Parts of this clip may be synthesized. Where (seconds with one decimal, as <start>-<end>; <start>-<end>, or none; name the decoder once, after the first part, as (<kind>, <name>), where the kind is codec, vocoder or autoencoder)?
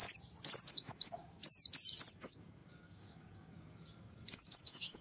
0.7-1.4 (codec, DAC); 2.1-5.0